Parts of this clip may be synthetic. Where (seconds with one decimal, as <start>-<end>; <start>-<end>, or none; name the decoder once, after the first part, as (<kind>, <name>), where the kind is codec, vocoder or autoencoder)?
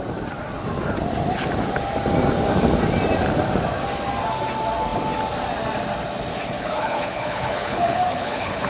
6.3-8.7 (codec, HILCodec)